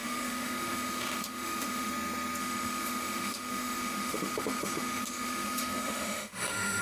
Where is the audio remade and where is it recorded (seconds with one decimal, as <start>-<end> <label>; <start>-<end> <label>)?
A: 0.0-1.9 remade; 1.9-2.4 recorded; 2.4-6.8 remade